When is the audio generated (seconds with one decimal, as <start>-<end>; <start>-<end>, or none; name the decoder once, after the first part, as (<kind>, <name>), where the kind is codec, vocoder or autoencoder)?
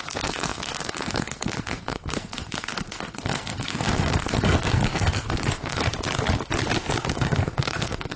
0.0-5.8 (codec, SNAC); 7.1-8.2